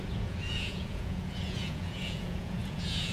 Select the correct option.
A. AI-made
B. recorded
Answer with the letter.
A